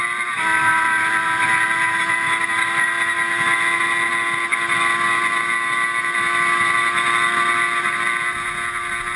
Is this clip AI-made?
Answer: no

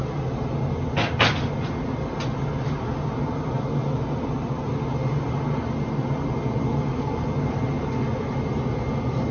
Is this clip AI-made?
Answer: no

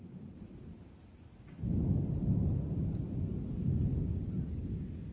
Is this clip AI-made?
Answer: no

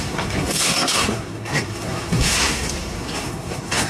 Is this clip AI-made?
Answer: yes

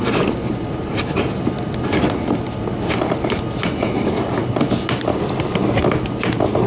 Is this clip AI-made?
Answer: no